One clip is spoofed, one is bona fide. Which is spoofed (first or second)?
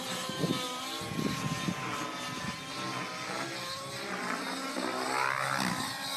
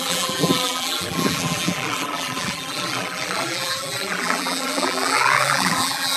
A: second